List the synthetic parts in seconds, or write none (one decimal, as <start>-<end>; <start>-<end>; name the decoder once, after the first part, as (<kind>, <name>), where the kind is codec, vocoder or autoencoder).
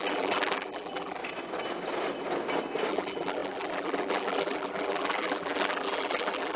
0.0-1.2 (vocoder, BigVGAN v2); 2.9-6.6